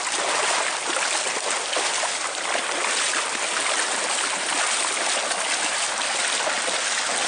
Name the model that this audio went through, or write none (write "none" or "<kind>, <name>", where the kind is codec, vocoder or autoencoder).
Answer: none